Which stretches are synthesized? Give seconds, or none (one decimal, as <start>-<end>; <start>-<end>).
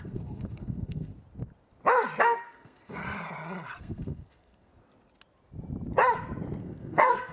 0.0-1.1; 2.2-3.0; 3.8-4.7; 6.6-7.3